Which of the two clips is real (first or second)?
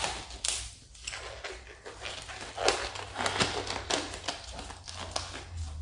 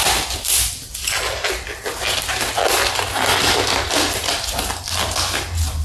first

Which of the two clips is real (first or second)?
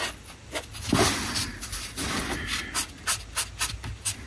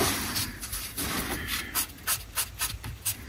first